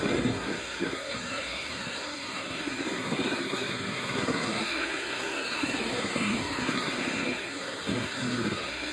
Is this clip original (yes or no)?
no